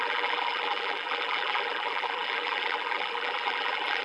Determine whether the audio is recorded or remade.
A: remade